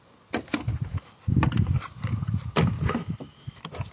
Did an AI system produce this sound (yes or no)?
no